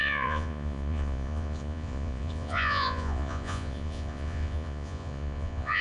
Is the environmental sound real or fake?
fake